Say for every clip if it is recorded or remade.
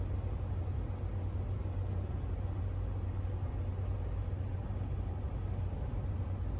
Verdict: recorded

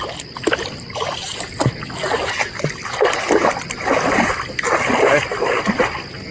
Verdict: recorded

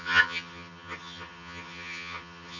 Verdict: remade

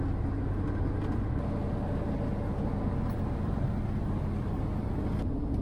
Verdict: recorded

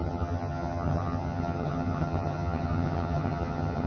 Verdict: remade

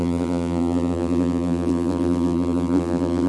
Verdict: remade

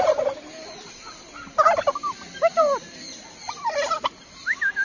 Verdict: recorded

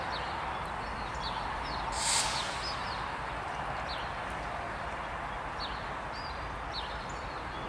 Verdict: recorded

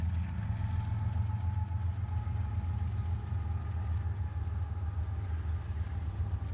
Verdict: recorded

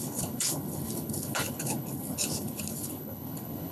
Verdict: remade